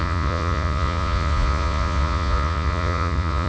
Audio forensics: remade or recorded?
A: remade